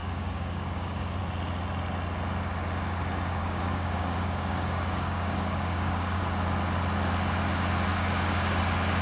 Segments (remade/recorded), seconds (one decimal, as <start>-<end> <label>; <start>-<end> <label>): 0.0-1.2 remade; 1.2-3.4 recorded; 3.4-6.2 remade; 6.2-7.9 recorded; 7.9-8.6 remade; 8.6-9.0 recorded